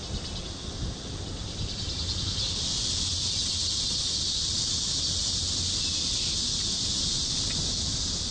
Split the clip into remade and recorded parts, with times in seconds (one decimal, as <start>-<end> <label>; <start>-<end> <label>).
0.0-8.3 recorded